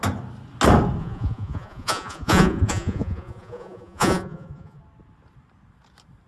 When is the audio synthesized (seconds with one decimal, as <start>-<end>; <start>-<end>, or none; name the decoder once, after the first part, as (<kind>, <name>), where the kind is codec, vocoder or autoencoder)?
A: 1.0-4.8 (vocoder, Vocos)